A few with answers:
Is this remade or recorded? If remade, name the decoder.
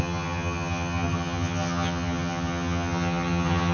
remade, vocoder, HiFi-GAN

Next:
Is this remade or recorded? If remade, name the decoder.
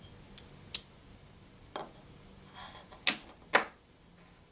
recorded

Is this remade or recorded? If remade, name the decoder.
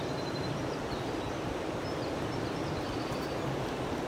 recorded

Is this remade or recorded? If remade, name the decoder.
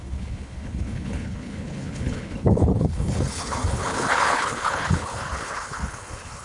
remade, codec, HILCodec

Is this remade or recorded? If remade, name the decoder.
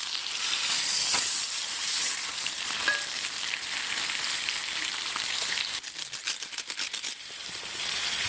remade, vocoder, BigVGAN v2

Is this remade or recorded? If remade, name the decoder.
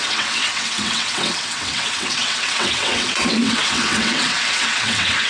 remade, vocoder, WaveNeXt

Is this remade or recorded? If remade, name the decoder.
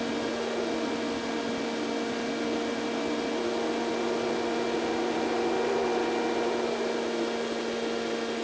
recorded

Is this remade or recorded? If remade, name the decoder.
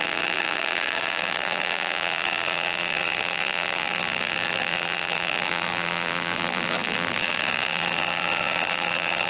remade, vocoder, BigVGAN v2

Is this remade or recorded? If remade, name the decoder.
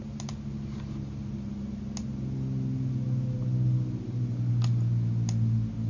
recorded